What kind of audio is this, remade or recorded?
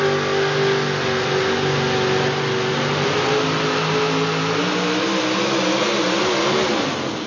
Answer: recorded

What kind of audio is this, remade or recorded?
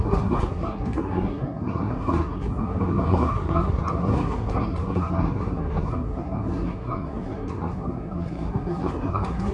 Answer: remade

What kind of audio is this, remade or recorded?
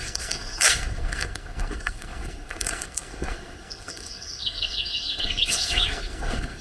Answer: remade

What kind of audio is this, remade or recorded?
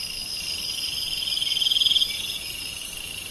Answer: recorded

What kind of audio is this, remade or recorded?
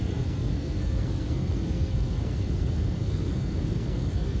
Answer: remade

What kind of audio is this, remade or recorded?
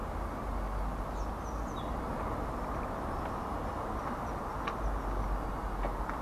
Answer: recorded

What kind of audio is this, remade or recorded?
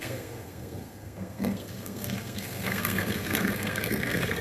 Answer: remade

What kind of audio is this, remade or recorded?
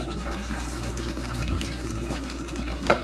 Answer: remade